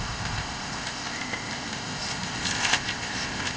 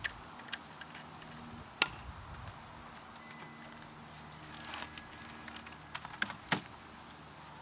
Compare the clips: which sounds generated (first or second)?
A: first